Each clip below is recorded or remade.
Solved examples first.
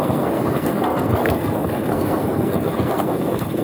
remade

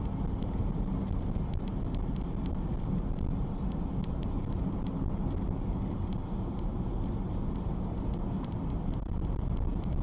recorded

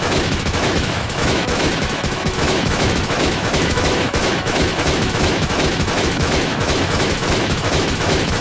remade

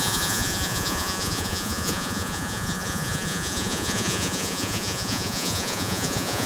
remade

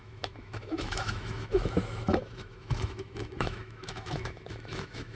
remade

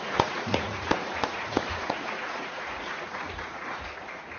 remade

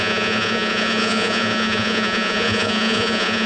remade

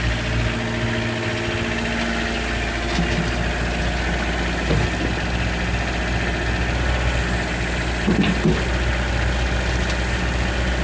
recorded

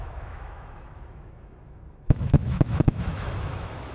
remade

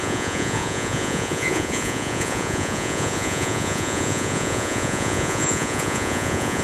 remade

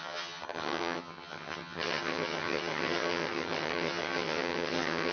remade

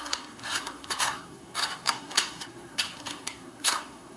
remade